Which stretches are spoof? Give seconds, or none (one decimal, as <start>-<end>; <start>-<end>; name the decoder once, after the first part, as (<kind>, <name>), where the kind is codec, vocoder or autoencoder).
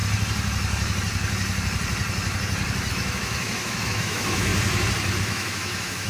2.9-4.5 (autoencoder, DAC-VAE); 5.2-6.1